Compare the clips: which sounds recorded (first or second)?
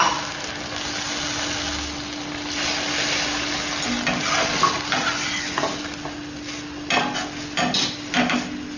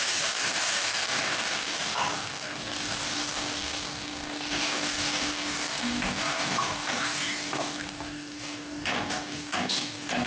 first